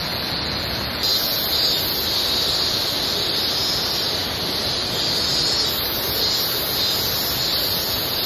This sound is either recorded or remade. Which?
recorded